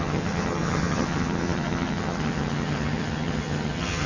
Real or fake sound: fake